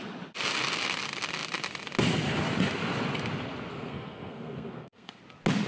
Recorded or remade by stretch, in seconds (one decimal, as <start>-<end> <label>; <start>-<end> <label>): 0.0-3.7 recorded; 3.7-5.2 remade; 5.2-5.7 recorded